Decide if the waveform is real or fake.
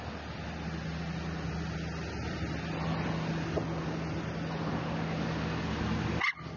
real